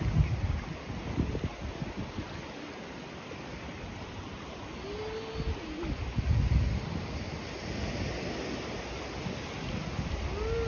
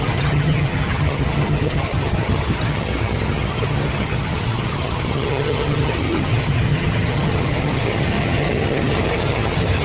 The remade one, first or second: second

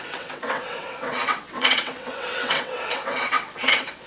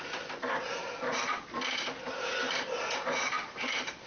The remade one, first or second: first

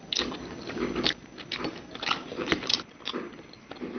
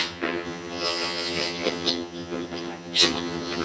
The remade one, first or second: second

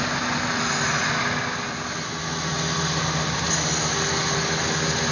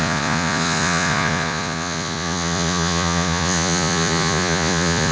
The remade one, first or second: second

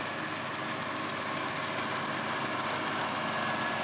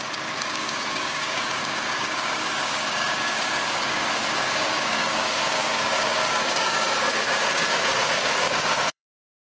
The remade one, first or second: second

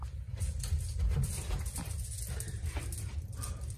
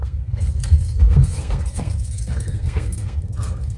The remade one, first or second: second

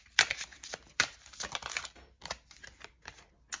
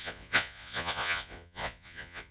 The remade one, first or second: second